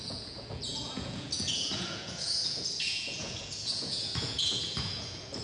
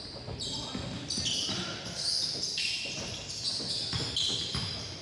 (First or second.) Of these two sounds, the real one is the second